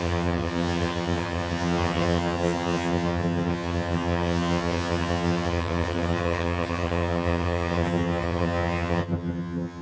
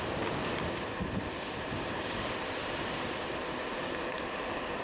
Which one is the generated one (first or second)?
first